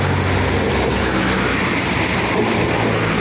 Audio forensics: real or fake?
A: real